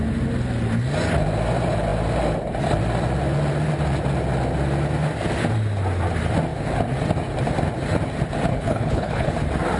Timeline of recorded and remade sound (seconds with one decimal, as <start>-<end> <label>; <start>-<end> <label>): 0.0-8.5 recorded; 8.5-9.3 remade; 9.3-9.8 recorded